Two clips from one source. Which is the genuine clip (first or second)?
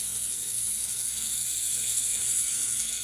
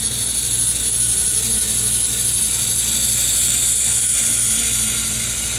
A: second